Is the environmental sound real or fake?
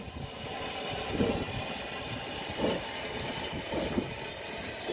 real